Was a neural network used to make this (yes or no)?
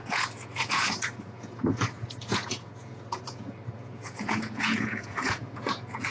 yes